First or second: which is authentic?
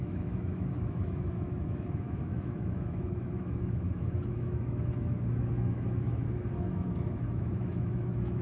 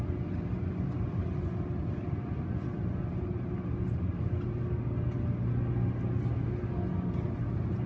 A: second